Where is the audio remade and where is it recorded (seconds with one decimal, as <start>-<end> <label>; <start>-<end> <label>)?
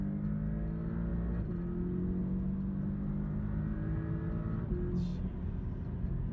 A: 0.0-6.3 recorded